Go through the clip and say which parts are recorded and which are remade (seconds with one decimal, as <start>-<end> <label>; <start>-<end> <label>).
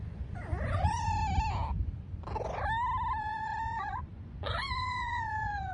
0.0-1.2 remade; 1.2-3.2 recorded; 3.2-5.7 remade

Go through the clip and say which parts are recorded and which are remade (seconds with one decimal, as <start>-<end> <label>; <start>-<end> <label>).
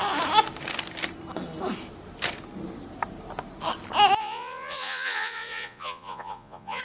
0.0-4.2 recorded; 4.2-6.8 remade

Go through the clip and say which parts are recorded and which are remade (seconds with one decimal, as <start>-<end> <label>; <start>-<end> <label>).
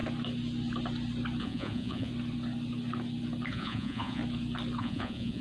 0.0-1.4 recorded; 1.4-2.1 remade; 2.1-3.5 recorded; 3.5-4.2 remade; 4.2-4.8 recorded; 4.8-5.4 remade